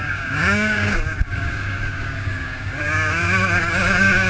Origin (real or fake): fake